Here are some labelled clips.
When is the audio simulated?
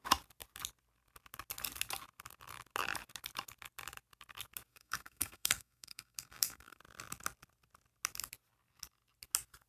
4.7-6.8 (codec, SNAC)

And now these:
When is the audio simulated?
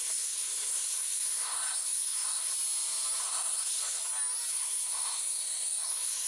0.0-2.5 (codec, SNAC); 3.2-4.0; 4.5-6.3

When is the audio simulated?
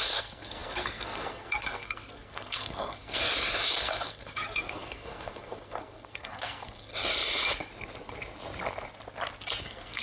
0.0-3.2 (codec, SNAC); 3.8-6.9; 9.6-10.0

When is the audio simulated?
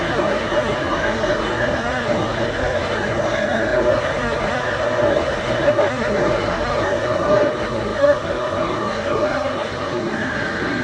0.0-10.8 (codec, SNAC)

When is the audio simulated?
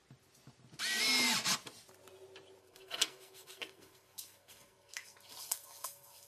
2.6-6.3 (codec, SNAC)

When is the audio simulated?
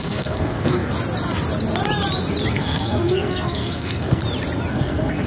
0.0-0.9 (codec, SNAC); 2.5-4.2; 4.7-5.3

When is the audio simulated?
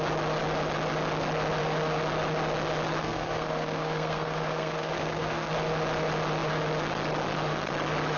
3.0-5.5 (codec, SNAC)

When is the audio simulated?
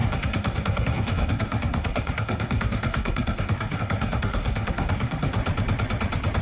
0.0-5.4 (codec, SNAC)